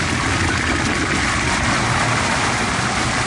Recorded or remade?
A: recorded